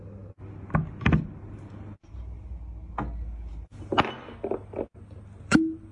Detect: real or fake real